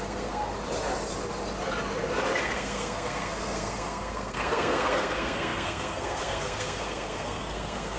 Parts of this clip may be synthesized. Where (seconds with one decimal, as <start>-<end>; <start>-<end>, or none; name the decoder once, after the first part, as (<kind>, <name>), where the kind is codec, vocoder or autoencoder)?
0.0-0.5 (codec, SNAC); 2.4-8.0